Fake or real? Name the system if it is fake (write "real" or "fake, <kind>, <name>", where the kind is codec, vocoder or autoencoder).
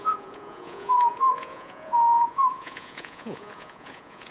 fake, vocoder, Vocos